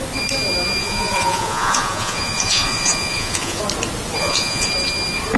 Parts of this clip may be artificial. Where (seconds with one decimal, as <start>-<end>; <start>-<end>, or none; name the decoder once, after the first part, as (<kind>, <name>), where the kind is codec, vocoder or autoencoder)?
0.8-3.6 (vocoder, Vocos); 4.2-4.7